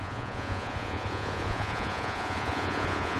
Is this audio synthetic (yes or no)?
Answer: yes